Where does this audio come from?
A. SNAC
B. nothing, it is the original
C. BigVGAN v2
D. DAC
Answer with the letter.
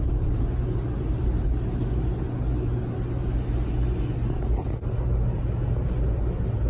B